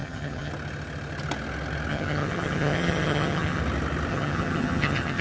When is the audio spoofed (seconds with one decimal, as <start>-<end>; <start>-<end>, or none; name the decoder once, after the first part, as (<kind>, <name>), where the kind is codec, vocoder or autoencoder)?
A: 0.0-0.5 (vocoder, HiFi-GAN); 1.9-3.6; 4.1-5.2